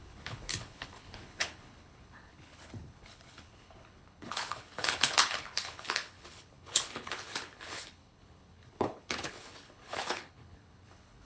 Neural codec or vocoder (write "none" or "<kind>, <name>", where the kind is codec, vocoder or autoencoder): codec, HILCodec